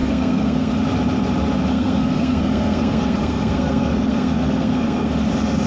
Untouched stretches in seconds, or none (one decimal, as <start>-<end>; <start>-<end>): 0.7-1.7; 5.1-5.7